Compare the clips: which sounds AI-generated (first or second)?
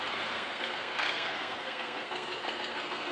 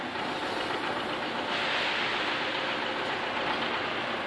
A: first